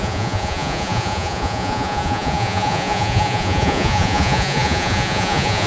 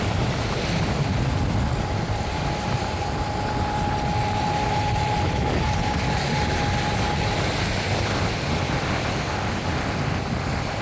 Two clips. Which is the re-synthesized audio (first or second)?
first